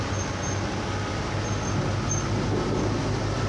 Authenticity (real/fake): real